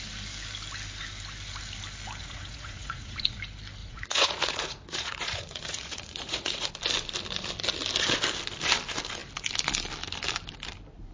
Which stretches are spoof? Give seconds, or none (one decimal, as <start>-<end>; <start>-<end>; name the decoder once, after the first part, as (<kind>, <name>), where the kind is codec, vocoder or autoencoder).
2.2-3.4 (vocoder, Vocos); 3.8-6.7